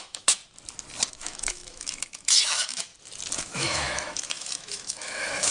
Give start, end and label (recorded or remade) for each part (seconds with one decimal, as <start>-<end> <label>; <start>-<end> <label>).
0.0-0.4 remade; 0.4-1.1 recorded; 1.1-2.9 remade; 2.9-3.4 recorded; 3.4-5.5 remade